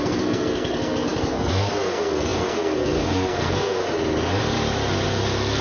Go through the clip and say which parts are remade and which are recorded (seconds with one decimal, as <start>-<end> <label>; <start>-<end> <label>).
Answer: 0.0-3.8 remade; 3.8-5.1 recorded; 5.1-5.6 remade